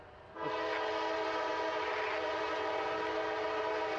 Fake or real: real